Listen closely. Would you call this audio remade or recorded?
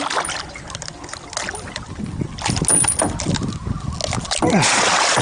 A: recorded